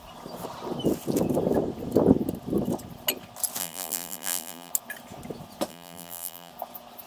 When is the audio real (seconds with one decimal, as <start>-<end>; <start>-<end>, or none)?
0.0-3.6; 4.7-5.7; 6.5-7.1